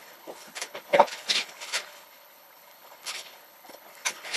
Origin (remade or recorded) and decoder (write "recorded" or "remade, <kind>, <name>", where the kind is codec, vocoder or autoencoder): remade, codec, HILCodec